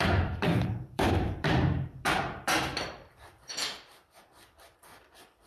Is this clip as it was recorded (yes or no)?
no